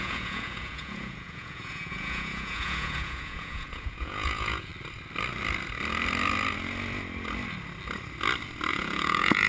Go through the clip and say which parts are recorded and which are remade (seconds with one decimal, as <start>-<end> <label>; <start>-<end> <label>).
0.0-4.7 remade; 4.7-8.7 recorded; 8.7-9.5 remade